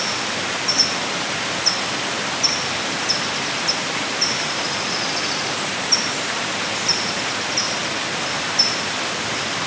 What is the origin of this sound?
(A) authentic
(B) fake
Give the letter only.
B